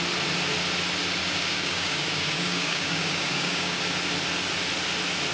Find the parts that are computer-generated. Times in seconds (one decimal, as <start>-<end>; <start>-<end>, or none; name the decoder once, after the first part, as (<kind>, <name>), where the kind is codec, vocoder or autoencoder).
1.2-3.8 (codec, DAC)